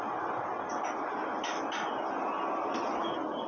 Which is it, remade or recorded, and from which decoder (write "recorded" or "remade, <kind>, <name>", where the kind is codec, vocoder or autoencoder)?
recorded